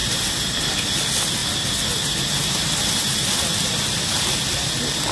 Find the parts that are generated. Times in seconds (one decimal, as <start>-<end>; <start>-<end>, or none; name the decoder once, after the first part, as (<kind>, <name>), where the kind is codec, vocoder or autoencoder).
none